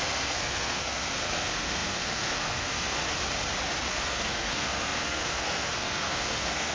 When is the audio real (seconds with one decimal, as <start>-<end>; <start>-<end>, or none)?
3.0-3.9